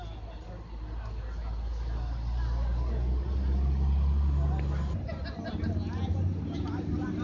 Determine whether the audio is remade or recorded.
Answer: recorded